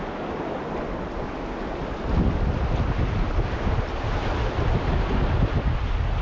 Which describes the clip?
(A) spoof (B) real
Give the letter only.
B